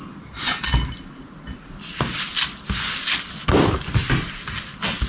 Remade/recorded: recorded